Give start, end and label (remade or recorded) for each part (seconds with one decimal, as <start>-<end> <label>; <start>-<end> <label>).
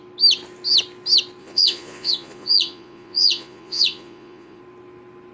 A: 0.0-1.4 recorded; 1.4-4.6 remade; 4.6-5.3 recorded